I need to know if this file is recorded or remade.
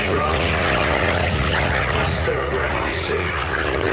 remade